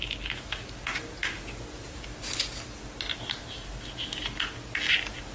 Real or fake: real